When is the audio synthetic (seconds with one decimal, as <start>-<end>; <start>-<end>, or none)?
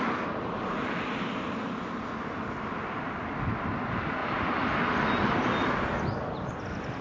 none